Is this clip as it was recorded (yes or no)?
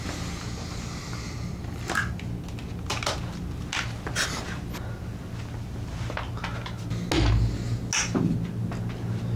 yes